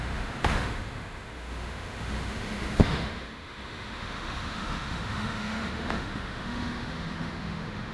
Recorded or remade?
remade